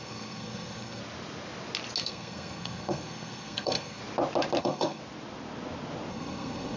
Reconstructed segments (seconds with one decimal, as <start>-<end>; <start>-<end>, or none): 0.0-1.0; 2.0-4.0; 4.6-5.0; 6.1-6.8